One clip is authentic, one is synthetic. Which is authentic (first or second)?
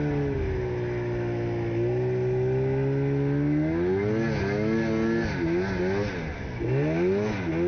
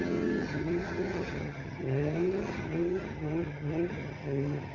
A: first